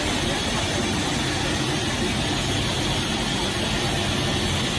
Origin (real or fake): real